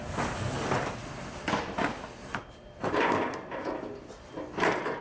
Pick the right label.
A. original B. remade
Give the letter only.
A